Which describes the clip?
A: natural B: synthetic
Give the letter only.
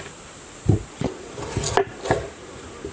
A